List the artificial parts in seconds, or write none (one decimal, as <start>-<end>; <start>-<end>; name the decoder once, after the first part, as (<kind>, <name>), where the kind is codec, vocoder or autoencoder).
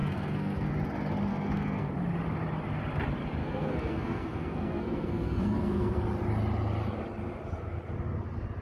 0.0-0.7 (codec, SNAC); 1.3-1.9; 3.4-6.0